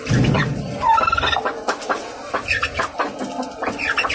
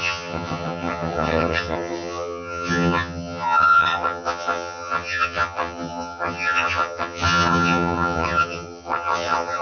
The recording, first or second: first